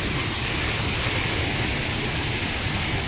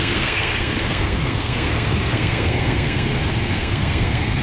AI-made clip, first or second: second